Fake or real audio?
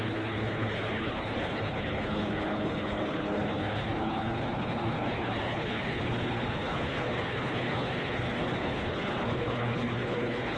fake